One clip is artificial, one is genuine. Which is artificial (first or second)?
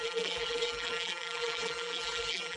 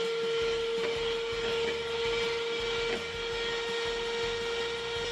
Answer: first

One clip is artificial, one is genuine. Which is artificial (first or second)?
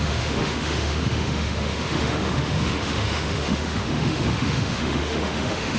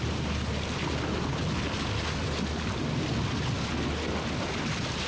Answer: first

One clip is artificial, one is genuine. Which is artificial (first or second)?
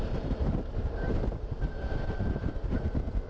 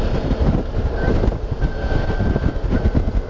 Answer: first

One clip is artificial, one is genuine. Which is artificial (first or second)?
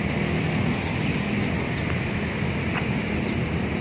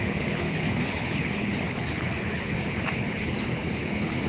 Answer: second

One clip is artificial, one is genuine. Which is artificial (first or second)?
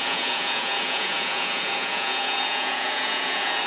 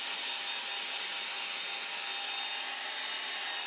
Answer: first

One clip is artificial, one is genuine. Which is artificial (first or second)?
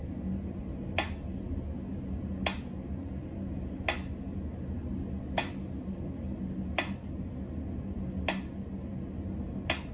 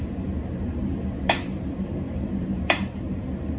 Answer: second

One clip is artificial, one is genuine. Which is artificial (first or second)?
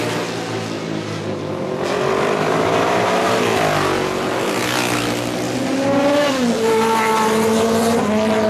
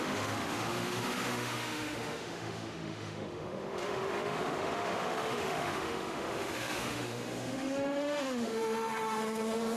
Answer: second